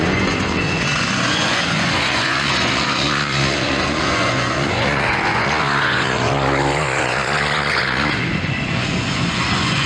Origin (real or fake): fake